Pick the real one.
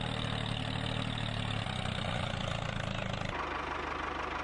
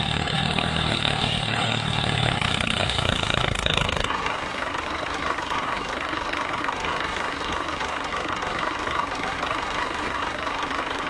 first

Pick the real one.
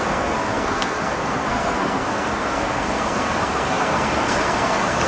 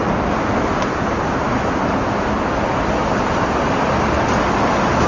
second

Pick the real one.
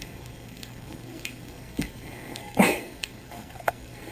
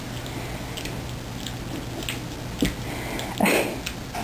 second